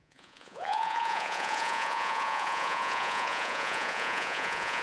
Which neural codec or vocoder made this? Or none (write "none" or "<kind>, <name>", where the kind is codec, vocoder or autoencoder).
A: vocoder, Vocos